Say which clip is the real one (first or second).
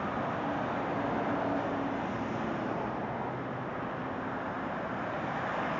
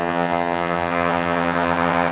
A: first